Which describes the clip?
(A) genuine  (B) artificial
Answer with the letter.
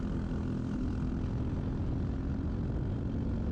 A